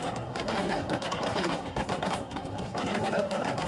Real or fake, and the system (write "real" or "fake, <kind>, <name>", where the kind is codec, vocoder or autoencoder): fake, codec, SNAC